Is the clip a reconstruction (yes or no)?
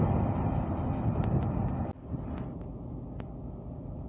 no